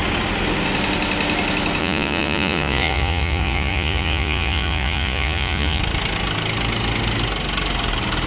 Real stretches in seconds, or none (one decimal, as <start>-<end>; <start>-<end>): 0.0-1.8; 5.8-8.3